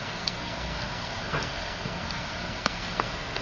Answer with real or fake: fake